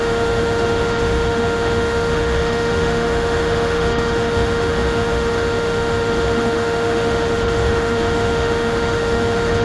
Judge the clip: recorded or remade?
remade